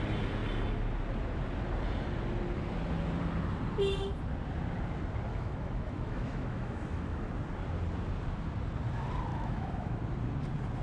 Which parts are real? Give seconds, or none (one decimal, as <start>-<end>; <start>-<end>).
0.0-5.3; 7.3-9.3; 10.0-10.8